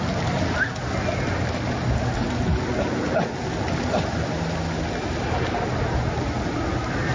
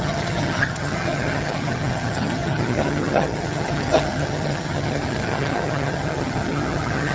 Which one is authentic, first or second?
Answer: first